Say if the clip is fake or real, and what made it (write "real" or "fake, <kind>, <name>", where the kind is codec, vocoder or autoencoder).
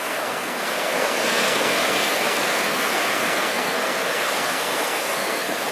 fake, codec, SNAC